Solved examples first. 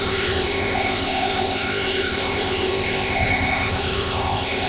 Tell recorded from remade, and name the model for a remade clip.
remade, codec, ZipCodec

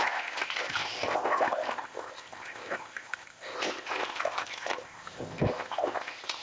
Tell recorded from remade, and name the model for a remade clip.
remade, codec, ZipCodec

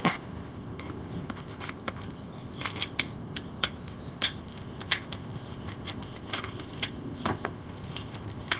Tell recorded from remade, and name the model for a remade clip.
remade, codec, ZipCodec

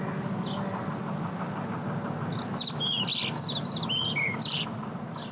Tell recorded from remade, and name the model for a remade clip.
recorded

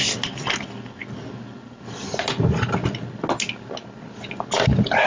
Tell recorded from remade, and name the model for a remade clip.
recorded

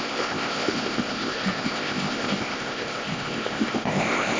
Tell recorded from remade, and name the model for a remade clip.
remade, codec, ZipCodec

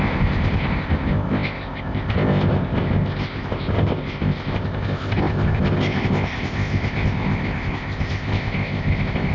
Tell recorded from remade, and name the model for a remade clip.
remade, codec, ZipCodec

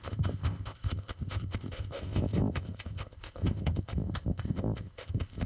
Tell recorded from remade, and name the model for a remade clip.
remade, codec, ZipCodec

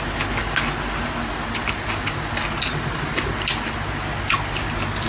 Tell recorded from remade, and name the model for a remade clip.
recorded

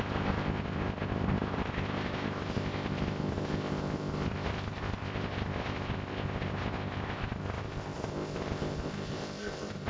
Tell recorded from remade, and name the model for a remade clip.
remade, codec, ZipCodec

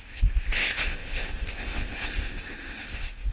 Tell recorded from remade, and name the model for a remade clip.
remade, codec, ZipCodec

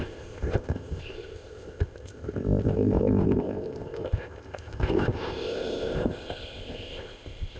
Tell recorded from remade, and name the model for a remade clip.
remade, codec, ZipCodec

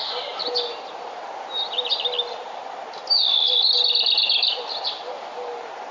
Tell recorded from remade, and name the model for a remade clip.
recorded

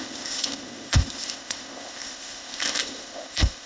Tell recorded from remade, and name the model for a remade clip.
remade, codec, ZipCodec